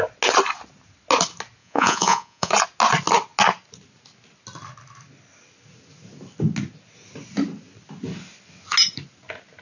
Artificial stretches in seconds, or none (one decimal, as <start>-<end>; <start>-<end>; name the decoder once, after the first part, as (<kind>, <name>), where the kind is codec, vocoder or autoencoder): 1.6-2.5 (vocoder, Vocos)